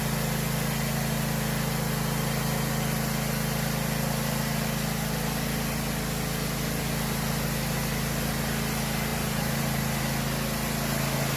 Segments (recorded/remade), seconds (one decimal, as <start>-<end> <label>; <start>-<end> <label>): 0.0-9.1 recorded; 9.1-10.0 remade; 10.0-11.4 recorded